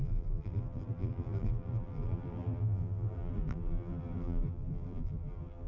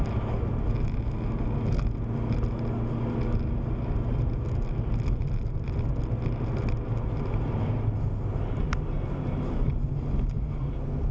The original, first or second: second